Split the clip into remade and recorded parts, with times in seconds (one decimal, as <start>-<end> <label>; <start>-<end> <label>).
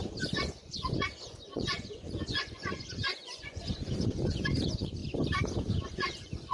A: 0.0-5.0 remade; 5.0-5.7 recorded; 5.7-6.5 remade